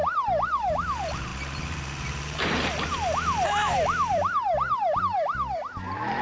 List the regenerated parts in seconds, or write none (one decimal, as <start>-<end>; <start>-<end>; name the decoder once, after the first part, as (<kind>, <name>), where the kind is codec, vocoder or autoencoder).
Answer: 0.0-6.2 (vocoder, BigVGAN v2)

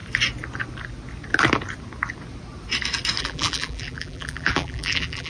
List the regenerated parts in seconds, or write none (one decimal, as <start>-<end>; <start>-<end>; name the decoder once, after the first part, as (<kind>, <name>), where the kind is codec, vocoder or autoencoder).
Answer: 3.2-5.3 (vocoder, BigVGAN v2)

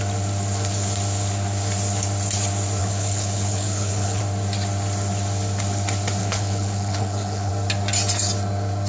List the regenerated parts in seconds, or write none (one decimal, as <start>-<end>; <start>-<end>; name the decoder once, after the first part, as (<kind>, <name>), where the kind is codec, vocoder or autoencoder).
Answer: 2.8-4.2 (codec, HILCodec); 6.2-7.5

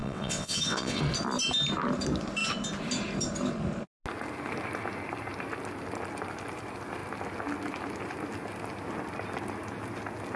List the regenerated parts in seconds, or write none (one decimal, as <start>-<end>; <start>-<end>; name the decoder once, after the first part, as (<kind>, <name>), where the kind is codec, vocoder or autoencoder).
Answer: 0.0-1.0 (vocoder, WaveNeXt)

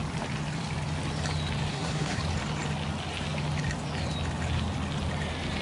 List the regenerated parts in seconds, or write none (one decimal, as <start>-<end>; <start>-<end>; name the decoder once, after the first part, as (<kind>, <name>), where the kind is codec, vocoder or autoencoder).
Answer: 1.7-2.2 (codec, SNAC)